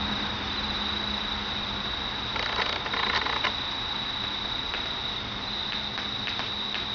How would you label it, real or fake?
real